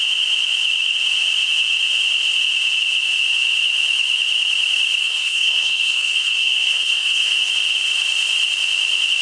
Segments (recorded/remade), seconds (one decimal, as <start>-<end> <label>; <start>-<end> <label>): 0.0-5.0 recorded; 5.0-7.5 remade; 7.5-9.2 recorded